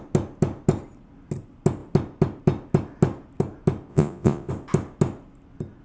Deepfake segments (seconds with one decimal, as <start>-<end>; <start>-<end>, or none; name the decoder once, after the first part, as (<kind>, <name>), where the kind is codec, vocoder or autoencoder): 3.9-4.5 (vocoder, Vocos)